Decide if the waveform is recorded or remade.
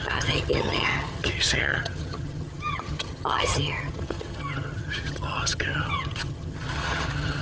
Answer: remade